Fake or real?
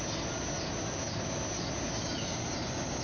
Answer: real